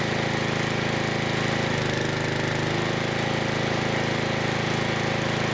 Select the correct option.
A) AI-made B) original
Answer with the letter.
B